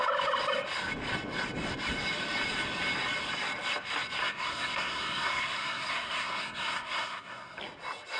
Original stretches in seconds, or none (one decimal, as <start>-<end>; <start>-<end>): 0.0-4.2; 7.6-8.2